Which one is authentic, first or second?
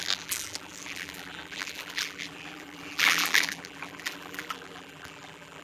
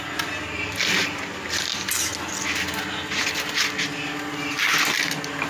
second